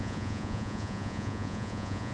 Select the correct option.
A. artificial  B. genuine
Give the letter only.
A